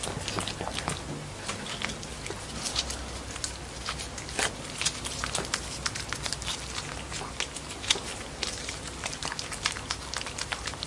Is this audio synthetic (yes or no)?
no